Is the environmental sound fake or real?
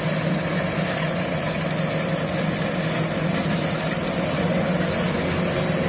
real